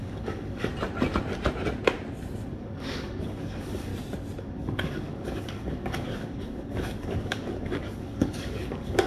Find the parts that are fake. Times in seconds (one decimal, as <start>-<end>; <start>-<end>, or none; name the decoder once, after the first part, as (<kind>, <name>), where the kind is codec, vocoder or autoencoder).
0.0-0.7 (codec, DAC); 2.5-3.9; 4.4-9.1